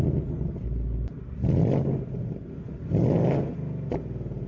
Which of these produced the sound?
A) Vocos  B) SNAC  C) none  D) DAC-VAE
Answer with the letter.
C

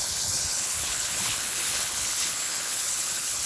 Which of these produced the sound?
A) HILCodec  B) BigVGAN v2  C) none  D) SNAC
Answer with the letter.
A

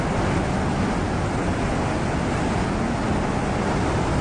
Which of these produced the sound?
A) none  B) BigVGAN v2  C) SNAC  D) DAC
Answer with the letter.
A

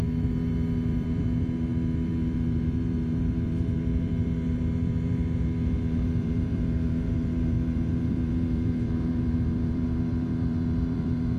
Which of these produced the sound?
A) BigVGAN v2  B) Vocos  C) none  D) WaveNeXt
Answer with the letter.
A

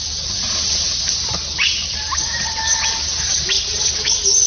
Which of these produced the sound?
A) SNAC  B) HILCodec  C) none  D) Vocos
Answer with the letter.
C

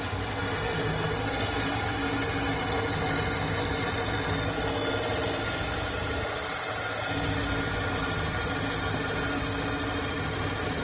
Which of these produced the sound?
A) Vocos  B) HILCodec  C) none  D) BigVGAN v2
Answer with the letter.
C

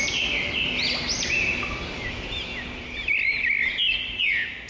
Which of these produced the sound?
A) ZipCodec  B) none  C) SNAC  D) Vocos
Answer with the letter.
B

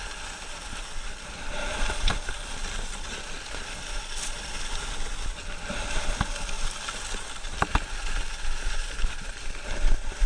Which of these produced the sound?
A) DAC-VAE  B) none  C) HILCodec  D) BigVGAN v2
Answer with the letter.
B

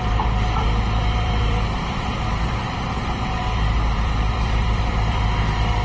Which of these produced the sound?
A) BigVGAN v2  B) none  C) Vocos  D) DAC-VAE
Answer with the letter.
A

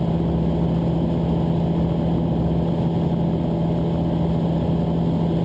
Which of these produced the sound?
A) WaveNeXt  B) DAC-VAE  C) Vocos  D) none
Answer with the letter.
D